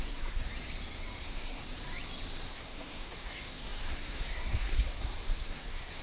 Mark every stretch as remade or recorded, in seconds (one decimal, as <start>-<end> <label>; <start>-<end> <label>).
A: 0.0-0.4 remade; 0.4-1.2 recorded; 1.2-1.6 remade; 1.6-2.5 recorded; 2.5-6.0 remade